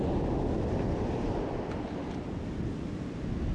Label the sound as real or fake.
real